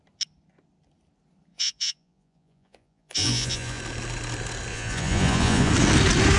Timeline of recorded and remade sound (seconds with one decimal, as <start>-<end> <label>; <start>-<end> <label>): 0.0-1.5 recorded; 1.5-3.8 remade; 3.8-4.7 recorded; 4.7-5.7 remade; 5.7-6.4 recorded